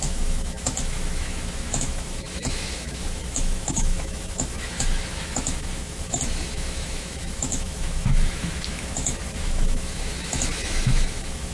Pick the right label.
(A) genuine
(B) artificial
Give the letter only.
B